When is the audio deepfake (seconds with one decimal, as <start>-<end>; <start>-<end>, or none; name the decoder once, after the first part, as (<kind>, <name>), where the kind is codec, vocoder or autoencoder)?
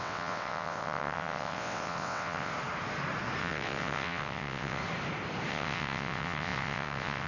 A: 0.0-2.5 (vocoder, WaveNeXt); 3.4-4.8; 5.5-7.3